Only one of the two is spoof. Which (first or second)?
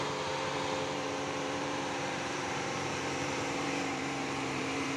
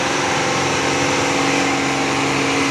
first